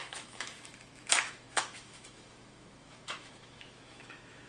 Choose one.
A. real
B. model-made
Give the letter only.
B